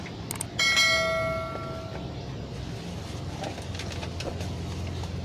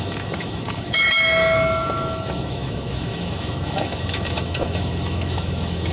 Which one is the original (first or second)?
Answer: first